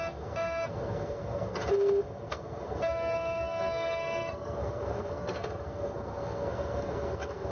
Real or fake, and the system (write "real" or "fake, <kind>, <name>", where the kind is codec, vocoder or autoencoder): fake, codec, SNAC